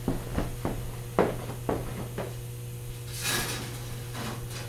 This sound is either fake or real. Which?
real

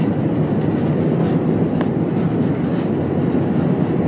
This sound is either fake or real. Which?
real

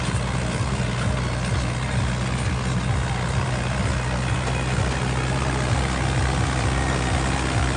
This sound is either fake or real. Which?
real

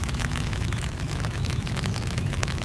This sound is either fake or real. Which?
fake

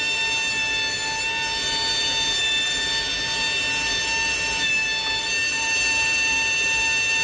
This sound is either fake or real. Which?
real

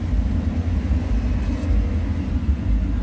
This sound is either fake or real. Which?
real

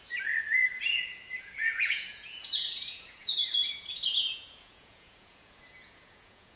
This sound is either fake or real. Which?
fake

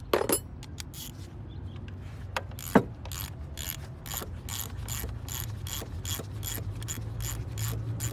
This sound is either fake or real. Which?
real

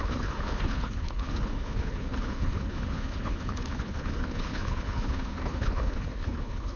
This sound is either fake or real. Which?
fake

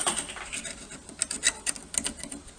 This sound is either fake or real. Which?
real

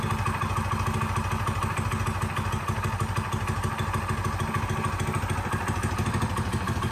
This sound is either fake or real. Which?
real